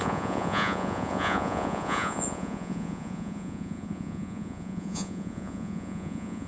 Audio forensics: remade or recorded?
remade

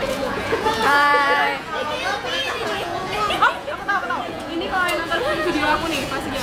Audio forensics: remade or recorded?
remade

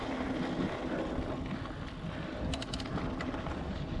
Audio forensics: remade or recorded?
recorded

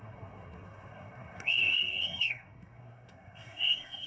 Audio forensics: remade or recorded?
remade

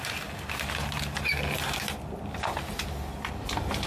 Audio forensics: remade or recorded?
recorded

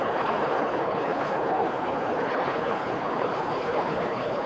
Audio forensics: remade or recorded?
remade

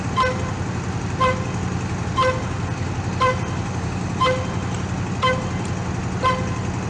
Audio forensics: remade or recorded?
recorded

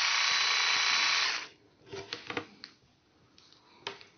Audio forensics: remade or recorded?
recorded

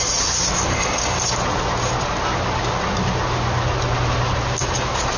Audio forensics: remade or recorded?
recorded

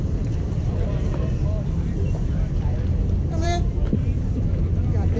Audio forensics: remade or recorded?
remade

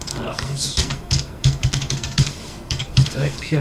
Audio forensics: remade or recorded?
remade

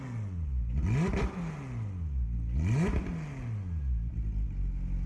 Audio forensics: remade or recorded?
recorded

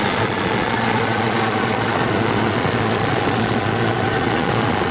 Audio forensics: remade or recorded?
remade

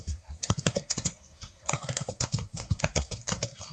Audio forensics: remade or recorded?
remade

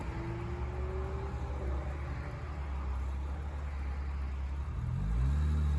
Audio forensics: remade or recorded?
recorded